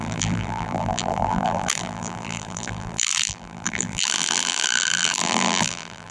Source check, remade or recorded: remade